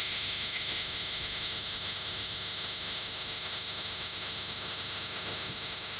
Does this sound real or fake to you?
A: fake